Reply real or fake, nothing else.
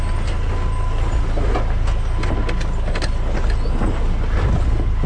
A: real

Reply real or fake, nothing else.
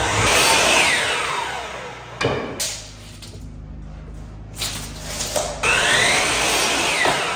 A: real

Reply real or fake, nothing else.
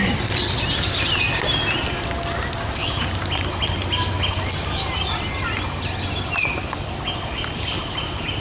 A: real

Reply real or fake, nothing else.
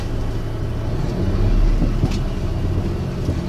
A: real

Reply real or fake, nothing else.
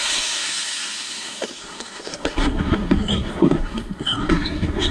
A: fake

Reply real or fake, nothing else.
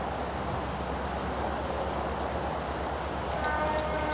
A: real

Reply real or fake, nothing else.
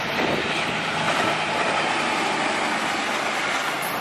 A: real